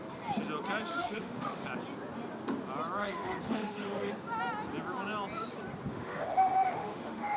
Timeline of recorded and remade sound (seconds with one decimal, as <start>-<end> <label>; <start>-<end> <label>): 0.0-0.9 recorded; 0.9-1.6 remade; 1.6-3.0 recorded; 3.0-4.1 remade; 4.1-5.9 recorded; 5.9-7.4 remade